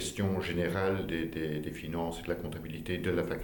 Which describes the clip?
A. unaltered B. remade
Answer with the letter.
A